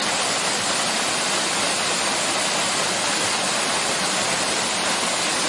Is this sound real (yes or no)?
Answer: yes